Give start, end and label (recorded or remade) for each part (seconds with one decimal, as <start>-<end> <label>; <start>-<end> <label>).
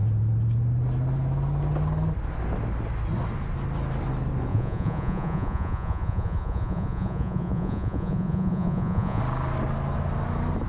0.0-4.5 recorded; 4.5-9.2 remade; 9.2-10.7 recorded